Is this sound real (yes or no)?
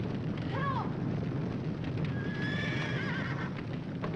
yes